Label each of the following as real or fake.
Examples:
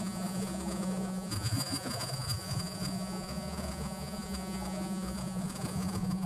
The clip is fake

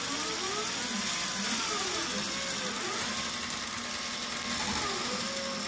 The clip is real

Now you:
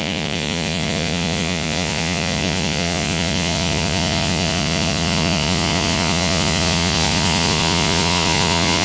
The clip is fake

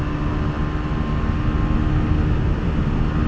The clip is real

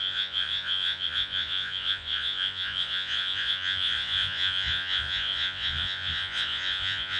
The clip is fake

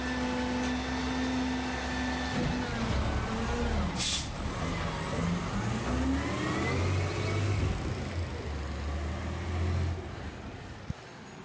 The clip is real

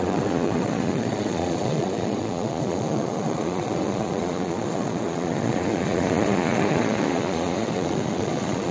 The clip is fake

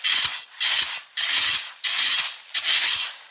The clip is real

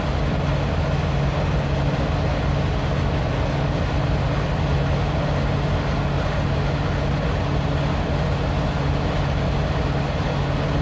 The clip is real